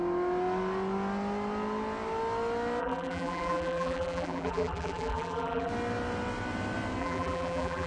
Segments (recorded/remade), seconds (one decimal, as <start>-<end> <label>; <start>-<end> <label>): 0.0-2.8 recorded; 2.8-5.7 remade; 5.7-7.0 recorded; 7.0-7.9 remade